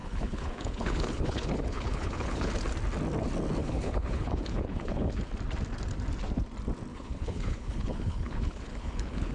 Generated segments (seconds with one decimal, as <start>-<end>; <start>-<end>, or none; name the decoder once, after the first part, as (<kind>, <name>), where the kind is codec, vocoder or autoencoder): 0.0-2.5 (codec, HILCodec); 3.6-5.2; 6.9-9.3